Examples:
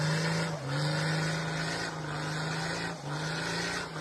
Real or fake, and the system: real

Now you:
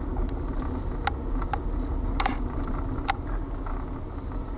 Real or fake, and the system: real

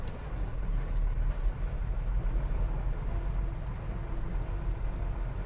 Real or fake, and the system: real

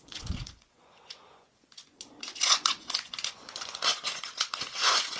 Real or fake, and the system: fake, vocoder, Vocos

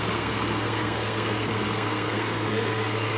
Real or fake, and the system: fake, codec, SNAC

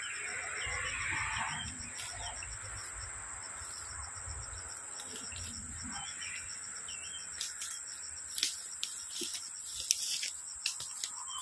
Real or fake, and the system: real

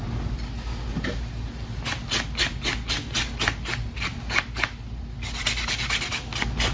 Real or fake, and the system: real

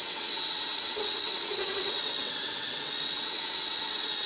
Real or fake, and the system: fake, vocoder, WaveNeXt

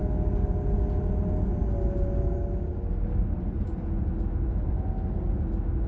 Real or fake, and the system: real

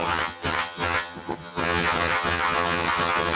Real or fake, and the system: fake, vocoder, HiFi-GAN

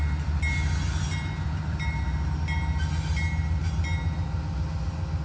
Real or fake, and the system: real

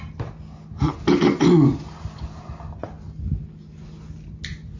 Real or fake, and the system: real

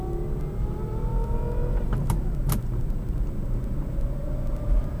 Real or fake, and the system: real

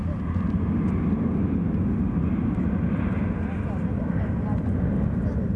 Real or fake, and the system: real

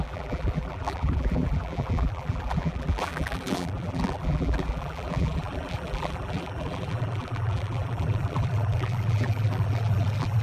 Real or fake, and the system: fake, vocoder, BigVGAN v2